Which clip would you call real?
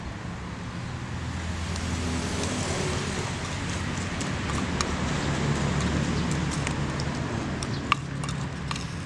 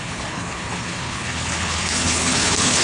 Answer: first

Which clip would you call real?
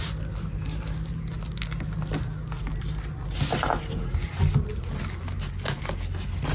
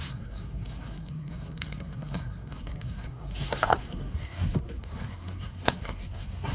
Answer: first